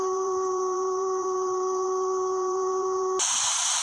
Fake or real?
fake